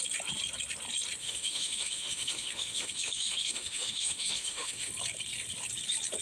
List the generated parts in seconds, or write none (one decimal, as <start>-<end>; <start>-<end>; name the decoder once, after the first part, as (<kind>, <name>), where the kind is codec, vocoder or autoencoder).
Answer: 1.2-4.9 (autoencoder, DAC-VAE)